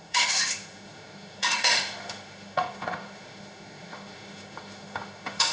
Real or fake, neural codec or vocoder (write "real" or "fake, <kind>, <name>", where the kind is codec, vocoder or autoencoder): fake, autoencoder, DAC-VAE